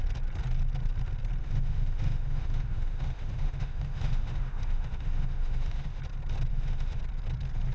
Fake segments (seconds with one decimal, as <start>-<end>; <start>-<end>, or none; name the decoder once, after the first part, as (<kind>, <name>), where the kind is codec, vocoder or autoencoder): 1.4-6.0 (autoencoder, DAC-VAE); 6.5-7.0